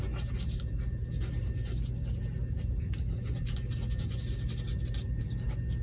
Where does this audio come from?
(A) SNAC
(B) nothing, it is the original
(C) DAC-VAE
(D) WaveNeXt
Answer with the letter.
B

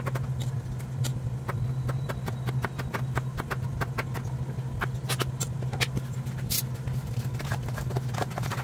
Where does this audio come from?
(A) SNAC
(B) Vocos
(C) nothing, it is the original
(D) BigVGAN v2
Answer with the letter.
C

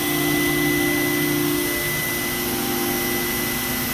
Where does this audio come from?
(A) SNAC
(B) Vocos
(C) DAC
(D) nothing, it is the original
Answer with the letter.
D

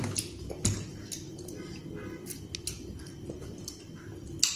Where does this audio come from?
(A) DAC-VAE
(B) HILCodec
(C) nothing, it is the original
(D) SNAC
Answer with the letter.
C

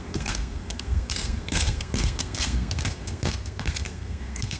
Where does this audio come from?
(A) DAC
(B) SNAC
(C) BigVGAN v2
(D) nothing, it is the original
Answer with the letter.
B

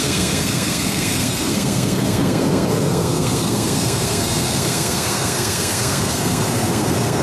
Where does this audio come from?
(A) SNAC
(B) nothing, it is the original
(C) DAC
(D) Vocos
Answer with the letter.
A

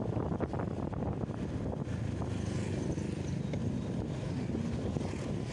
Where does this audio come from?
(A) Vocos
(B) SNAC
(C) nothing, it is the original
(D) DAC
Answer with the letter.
C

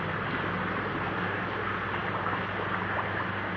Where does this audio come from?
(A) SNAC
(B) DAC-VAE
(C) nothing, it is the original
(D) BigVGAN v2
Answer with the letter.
C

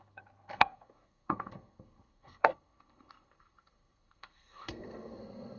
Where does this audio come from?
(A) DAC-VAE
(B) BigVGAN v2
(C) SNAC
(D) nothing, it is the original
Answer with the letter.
C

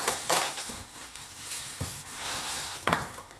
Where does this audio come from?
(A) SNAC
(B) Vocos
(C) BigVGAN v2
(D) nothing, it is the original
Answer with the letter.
A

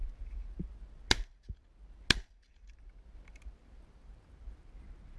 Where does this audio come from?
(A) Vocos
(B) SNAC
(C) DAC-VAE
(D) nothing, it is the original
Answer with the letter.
D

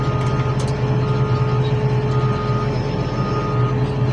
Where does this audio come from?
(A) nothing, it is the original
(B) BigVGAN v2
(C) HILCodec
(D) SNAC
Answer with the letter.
A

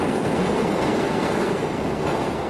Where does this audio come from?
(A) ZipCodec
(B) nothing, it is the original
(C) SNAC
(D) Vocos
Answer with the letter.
C